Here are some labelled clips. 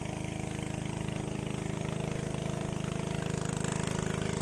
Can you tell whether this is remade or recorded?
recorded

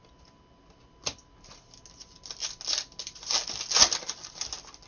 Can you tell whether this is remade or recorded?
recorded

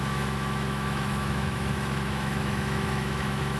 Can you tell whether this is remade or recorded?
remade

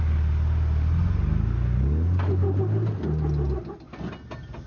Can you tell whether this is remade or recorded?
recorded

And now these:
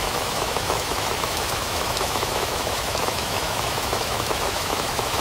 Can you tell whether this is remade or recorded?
remade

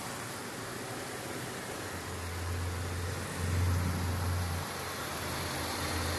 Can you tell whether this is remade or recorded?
recorded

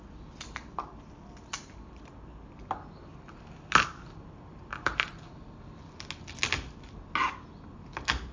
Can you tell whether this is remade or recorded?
recorded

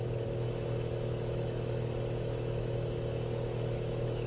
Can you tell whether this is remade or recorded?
remade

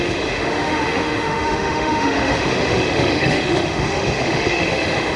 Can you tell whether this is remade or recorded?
remade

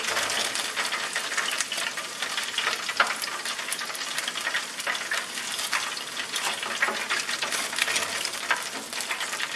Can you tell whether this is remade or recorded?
recorded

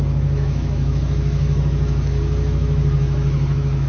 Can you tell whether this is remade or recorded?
remade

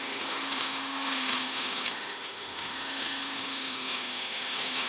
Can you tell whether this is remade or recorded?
remade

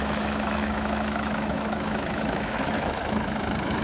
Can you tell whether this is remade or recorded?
remade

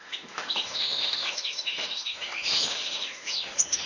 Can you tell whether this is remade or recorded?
remade